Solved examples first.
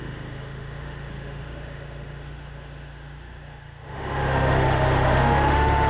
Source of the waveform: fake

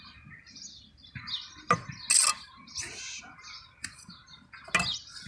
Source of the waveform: real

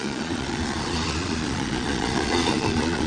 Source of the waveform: fake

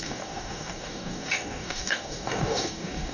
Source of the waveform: fake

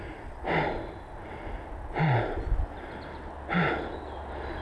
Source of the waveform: real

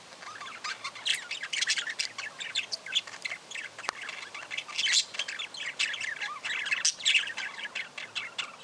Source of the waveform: real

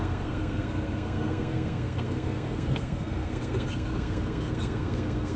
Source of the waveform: fake